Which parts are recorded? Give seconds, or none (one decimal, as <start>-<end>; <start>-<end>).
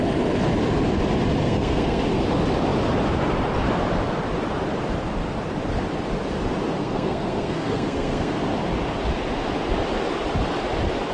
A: 0.0-1.4; 2.0-6.8; 8.4-11.1